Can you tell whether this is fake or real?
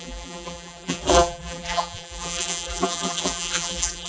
fake